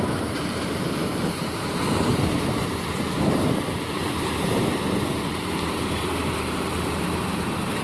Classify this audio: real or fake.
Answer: fake